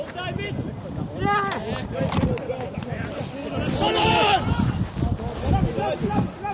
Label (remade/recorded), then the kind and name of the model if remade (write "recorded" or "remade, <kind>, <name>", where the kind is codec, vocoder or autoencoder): recorded